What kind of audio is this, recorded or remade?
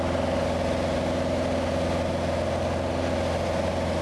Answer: recorded